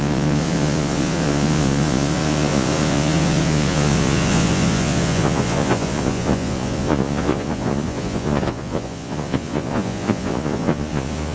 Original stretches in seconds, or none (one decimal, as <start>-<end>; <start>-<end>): none